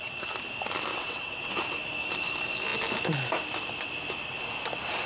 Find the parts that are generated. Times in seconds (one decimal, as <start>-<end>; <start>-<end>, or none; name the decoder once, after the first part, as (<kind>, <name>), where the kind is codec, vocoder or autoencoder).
0.9-1.5 (vocoder, WaveNeXt)